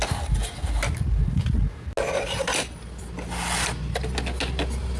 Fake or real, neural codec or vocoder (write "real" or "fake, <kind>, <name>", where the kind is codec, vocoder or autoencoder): real